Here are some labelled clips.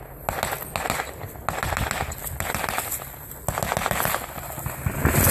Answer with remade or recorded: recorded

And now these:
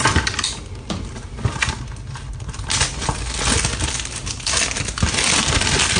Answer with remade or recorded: recorded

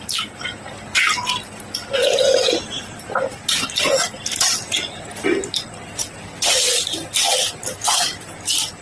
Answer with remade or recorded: recorded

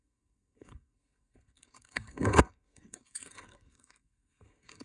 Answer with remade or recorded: remade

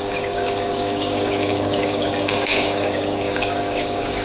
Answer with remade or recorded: remade